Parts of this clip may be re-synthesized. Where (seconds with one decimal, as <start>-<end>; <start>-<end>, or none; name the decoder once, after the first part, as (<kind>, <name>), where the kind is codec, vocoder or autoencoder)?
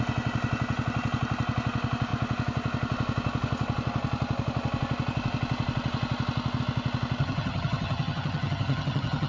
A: 7.2-9.3 (vocoder, HiFi-GAN)